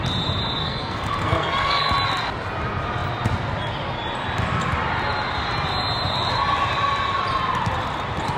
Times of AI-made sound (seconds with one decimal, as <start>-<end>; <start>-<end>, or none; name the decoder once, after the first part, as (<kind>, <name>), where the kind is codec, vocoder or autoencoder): 0.6-1.9 (codec, SNAC)